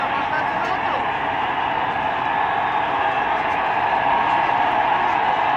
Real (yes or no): yes